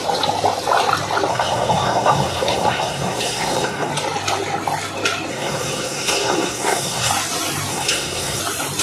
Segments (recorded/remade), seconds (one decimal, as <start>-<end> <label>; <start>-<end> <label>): 0.0-1.3 recorded; 1.3-3.9 remade; 3.9-5.3 recorded; 5.3-7.1 remade; 7.1-7.7 recorded; 7.7-8.4 remade; 8.4-8.8 recorded